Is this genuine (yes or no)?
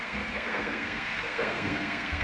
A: no